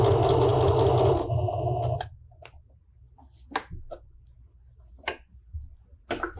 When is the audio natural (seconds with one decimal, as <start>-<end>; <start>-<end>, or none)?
0.0-6.4